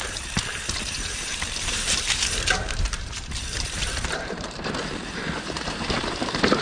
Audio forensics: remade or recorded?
remade